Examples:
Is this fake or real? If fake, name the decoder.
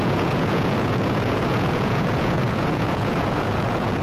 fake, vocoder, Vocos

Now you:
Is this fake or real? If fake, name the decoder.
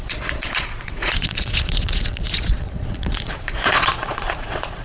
fake, vocoder, Vocos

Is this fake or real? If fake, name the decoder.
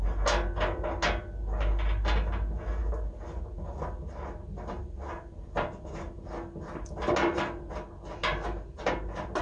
real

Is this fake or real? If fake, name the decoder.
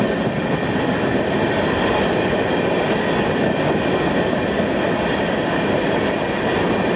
real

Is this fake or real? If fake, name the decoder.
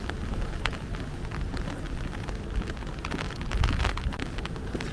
real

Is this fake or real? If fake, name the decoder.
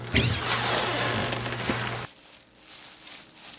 real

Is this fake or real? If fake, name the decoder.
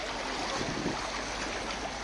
real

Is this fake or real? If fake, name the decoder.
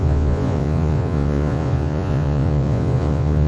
fake, vocoder, Vocos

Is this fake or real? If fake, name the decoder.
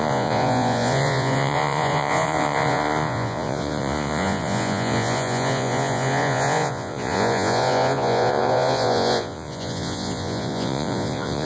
fake, vocoder, Vocos